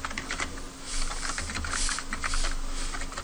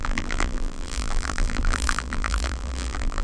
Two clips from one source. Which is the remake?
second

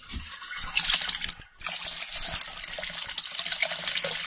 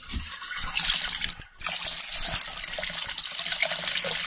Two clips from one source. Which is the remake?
second